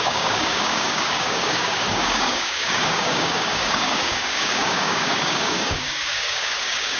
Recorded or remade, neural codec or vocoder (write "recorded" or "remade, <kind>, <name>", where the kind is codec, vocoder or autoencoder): remade, codec, DAC